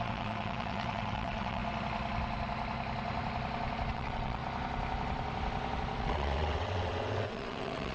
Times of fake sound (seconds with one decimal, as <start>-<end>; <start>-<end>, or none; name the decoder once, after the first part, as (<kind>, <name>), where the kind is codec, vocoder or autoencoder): 0.0-1.6 (vocoder, WaveNeXt); 3.9-4.4; 6.0-7.9